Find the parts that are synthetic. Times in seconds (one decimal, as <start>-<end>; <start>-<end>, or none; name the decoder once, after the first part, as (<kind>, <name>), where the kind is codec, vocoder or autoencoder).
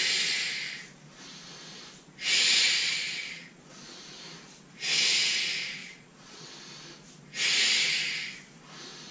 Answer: 2.8-3.6 (vocoder, Vocos); 5.8-6.5